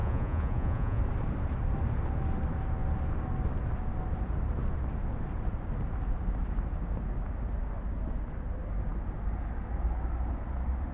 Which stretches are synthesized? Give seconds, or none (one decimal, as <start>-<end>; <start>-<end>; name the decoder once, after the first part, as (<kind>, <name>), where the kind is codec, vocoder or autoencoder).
0.0-1.0 (vocoder, Vocos)